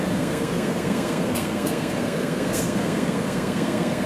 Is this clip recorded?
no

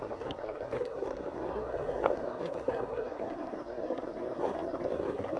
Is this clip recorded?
no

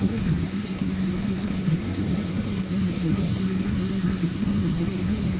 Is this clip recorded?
no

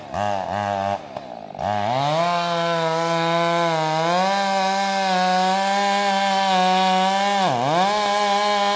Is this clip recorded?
yes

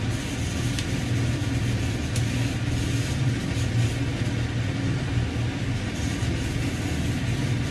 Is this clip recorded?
yes